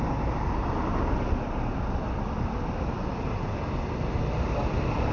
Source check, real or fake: real